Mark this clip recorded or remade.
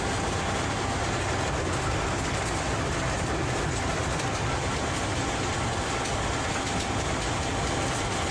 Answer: recorded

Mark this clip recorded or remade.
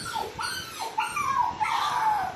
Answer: recorded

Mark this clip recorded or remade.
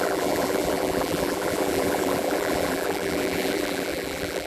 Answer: remade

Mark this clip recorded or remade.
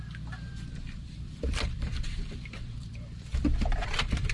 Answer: remade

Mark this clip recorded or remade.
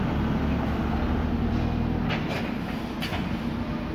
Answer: recorded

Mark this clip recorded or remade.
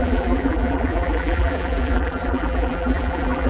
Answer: remade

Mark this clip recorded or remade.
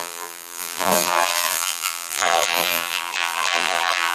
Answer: remade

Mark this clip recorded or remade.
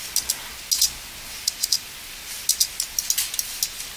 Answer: recorded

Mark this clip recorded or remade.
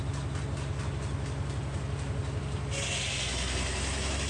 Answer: recorded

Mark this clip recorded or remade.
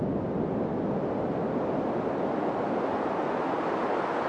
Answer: recorded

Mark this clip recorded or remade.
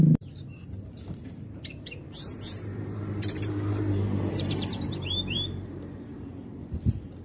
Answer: remade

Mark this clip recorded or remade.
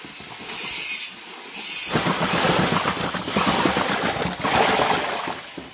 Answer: recorded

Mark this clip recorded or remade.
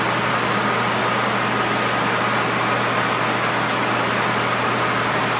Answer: recorded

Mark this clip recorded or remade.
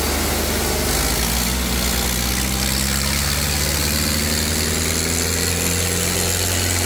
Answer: recorded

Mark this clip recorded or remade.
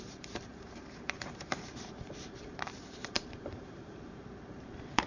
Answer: remade